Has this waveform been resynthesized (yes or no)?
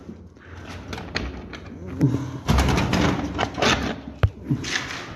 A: no